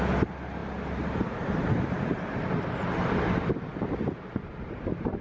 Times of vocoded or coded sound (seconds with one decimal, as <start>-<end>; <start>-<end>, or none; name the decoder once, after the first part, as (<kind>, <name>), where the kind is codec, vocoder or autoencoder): none